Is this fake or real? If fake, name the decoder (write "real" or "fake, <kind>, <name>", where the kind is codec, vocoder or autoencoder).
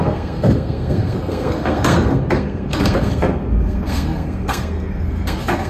fake, codec, SNAC